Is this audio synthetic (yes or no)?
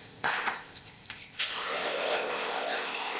yes